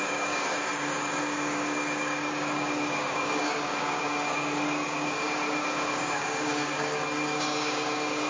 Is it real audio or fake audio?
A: fake